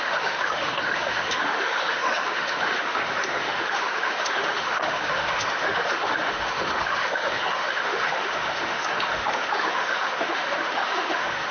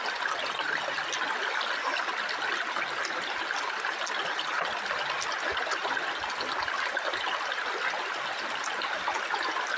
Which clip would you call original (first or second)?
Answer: second